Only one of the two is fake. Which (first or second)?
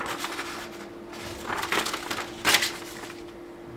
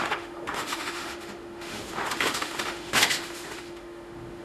second